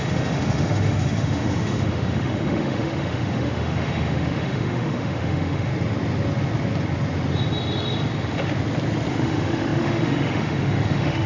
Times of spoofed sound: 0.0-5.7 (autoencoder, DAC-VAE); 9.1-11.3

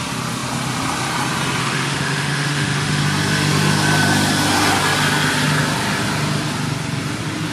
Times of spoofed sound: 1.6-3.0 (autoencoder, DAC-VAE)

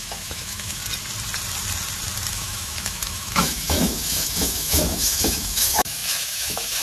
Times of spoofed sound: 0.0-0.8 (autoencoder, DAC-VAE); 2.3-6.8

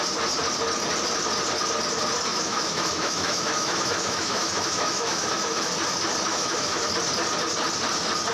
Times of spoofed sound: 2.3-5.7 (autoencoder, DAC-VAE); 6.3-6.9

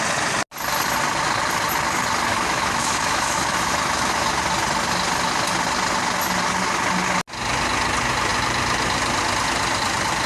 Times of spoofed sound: 2.3-4.3 (autoencoder, DAC-VAE)